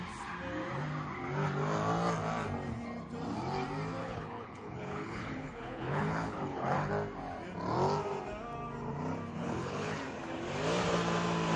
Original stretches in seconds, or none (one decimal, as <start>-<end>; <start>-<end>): 0.0-4.0; 6.9-9.3; 10.0-11.6